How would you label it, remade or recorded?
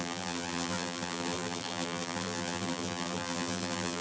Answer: remade